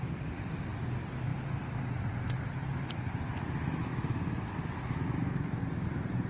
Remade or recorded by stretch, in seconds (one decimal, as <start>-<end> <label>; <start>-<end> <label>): 0.0-3.8 recorded; 3.8-5.5 remade; 5.5-6.3 recorded